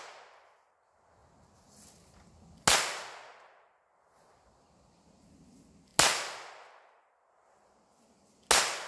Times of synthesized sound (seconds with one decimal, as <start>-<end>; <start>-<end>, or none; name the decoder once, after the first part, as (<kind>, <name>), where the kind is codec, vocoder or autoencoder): none